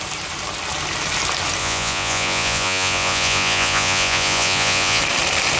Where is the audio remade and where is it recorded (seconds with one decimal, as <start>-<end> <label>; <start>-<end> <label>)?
0.0-1.6 recorded; 1.6-5.0 remade; 5.0-5.6 recorded